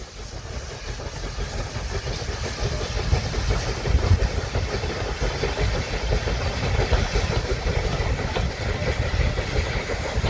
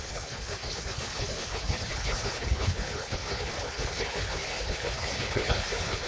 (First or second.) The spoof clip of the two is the second